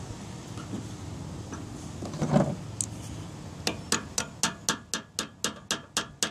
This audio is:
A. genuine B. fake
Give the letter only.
A